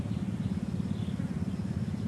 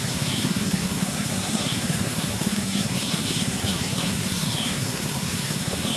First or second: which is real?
first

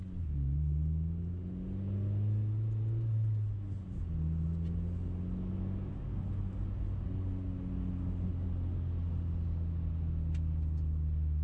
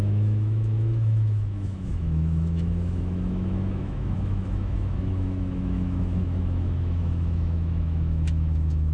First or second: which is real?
first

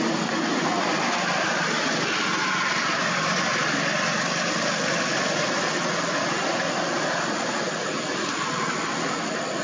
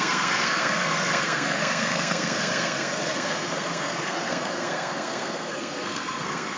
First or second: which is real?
first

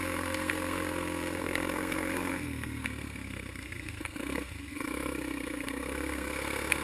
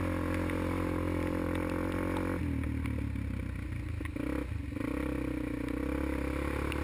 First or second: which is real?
second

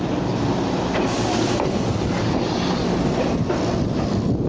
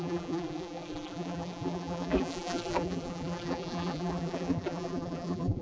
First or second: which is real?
first